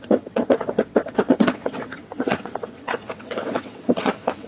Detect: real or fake fake